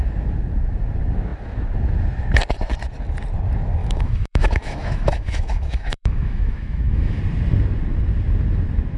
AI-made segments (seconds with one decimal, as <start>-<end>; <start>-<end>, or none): 3.8-7.2